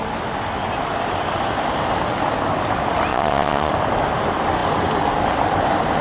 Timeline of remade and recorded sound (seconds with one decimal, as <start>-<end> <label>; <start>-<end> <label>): 0.0-3.1 recorded; 3.1-3.7 remade; 3.7-6.0 recorded

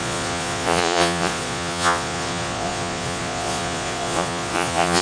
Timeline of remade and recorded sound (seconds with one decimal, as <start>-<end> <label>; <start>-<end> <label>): 0.0-5.0 remade

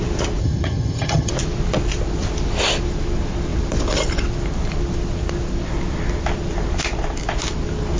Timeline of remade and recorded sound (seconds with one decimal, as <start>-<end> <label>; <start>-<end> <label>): 0.0-0.4 recorded; 0.4-1.3 remade; 1.3-8.0 recorded